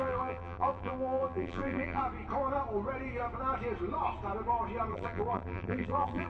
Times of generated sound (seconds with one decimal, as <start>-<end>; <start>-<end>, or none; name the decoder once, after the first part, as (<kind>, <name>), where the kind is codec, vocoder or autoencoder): 0.0-2.0 (vocoder, BigVGAN v2); 4.9-6.3